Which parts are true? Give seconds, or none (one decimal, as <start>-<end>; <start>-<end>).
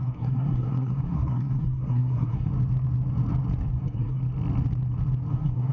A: 2.5-3.7; 4.2-5.3